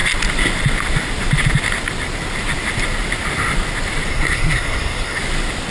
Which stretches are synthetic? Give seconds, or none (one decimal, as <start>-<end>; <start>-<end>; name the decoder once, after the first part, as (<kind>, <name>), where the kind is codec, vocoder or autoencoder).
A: 4.1-5.2 (codec, SNAC)